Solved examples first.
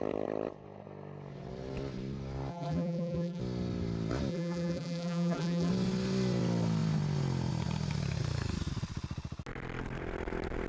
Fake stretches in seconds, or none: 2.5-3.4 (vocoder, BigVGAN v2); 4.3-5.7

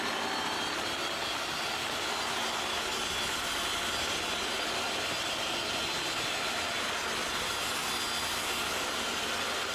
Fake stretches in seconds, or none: none

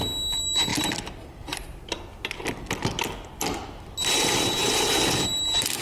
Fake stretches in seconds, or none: none